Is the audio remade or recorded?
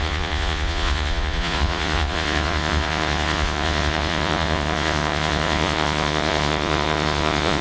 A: remade